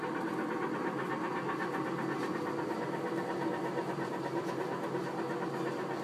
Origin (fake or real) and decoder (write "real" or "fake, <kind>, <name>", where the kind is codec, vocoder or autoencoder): real